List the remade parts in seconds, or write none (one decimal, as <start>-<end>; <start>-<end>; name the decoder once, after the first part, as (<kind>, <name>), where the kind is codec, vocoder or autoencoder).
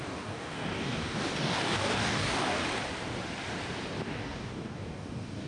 0.0-2.6 (codec, DAC); 4.0-5.5